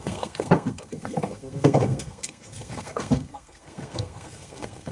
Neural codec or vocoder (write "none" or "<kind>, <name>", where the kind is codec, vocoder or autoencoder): codec, SNAC